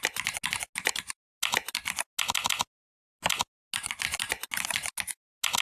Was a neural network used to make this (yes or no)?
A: no